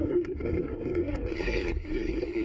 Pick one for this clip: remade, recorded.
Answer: remade